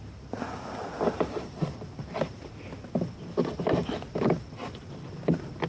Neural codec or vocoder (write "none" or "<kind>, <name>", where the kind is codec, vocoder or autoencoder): none